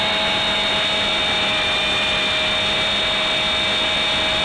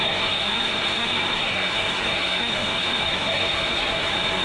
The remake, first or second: second